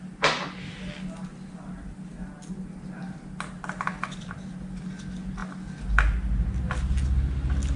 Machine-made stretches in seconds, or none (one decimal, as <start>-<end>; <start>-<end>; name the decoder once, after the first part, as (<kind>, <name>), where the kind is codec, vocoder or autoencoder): none